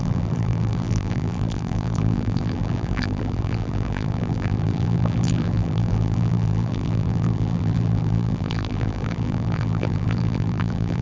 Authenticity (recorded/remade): remade